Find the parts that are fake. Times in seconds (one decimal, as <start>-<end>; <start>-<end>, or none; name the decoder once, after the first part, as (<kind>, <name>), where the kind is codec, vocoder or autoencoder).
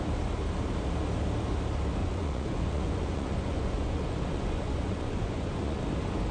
2.0-5.8 (vocoder, Vocos)